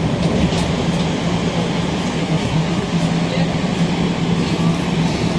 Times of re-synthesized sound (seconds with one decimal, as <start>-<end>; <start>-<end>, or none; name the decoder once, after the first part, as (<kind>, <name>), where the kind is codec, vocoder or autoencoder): 2.2-3.0 (codec, SNAC)